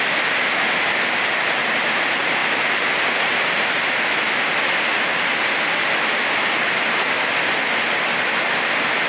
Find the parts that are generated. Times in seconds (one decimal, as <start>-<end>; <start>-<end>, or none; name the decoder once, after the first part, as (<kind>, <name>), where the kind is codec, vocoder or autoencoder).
none